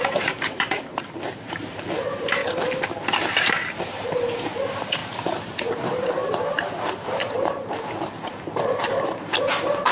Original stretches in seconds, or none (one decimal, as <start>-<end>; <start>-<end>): 2.4-3.7; 5.0-5.7